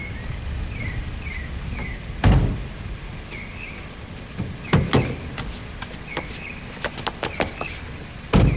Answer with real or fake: real